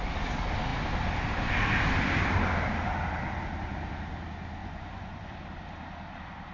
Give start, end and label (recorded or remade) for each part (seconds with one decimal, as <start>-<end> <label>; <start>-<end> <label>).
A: 0.0-4.6 recorded; 4.6-5.3 remade; 5.3-6.5 recorded